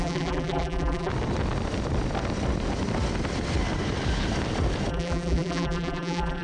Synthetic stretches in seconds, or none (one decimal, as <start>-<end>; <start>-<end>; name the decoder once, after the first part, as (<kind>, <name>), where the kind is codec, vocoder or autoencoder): 0.0-1.1 (vocoder, BigVGAN v2); 4.9-6.4